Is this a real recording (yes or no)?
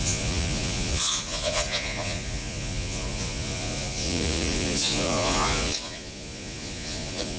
no